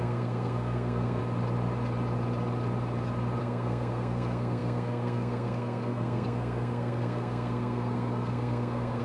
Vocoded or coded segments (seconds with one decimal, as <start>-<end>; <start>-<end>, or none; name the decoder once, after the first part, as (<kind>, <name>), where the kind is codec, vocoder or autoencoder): 0.0-1.2 (codec, SNAC); 3.4-9.0

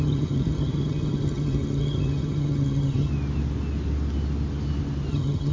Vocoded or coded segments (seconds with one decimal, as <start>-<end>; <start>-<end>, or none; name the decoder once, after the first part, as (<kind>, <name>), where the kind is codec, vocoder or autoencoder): 0.0-3.1 (vocoder, HiFi-GAN); 5.1-5.5